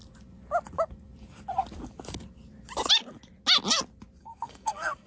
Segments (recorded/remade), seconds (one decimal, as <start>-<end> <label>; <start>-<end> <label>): 0.0-4.2 recorded; 4.2-5.1 remade